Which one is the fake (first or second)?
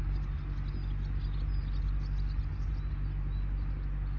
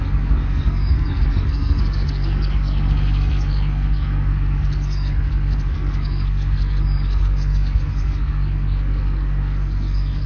second